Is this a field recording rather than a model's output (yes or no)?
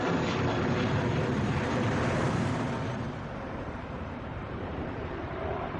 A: no